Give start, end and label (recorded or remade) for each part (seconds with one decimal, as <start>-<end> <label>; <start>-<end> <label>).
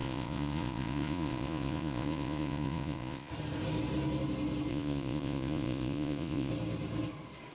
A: 0.0-3.3 remade; 3.3-4.7 recorded; 4.7-6.5 remade; 6.5-7.5 recorded